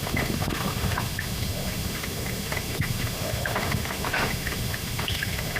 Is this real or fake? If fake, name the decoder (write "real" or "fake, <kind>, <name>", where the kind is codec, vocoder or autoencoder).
fake, autoencoder, DAC-VAE